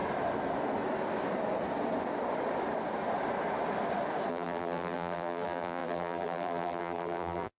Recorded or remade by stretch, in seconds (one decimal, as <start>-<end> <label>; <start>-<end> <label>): 0.0-4.3 recorded; 4.3-7.6 remade